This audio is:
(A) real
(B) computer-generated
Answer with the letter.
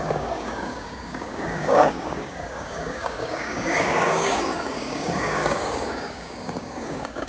B